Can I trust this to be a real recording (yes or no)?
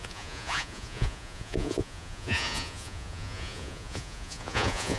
no